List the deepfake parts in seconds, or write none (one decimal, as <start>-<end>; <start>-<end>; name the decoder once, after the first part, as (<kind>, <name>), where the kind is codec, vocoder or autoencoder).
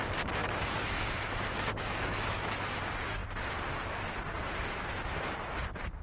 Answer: 0.4-2.8 (autoencoder, DAC-VAE)